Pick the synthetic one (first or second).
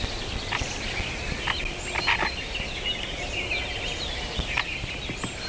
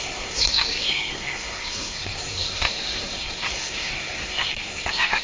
second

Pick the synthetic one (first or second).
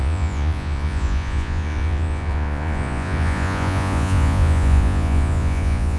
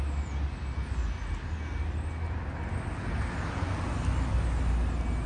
first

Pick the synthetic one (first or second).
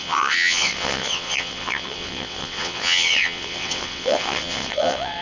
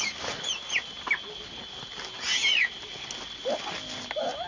first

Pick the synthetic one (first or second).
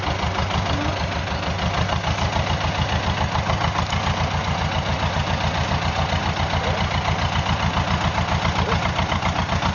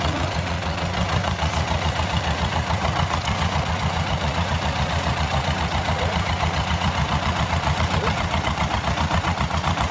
second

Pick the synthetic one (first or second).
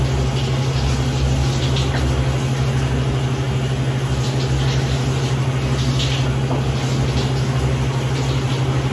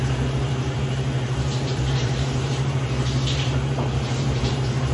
second